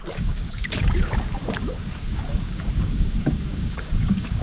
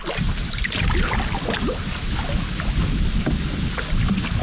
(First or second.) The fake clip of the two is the first